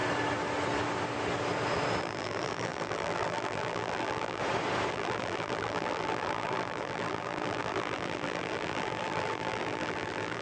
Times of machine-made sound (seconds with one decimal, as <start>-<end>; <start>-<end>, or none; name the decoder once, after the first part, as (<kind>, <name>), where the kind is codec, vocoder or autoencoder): 2.0-4.4 (vocoder, BigVGAN v2); 4.9-10.4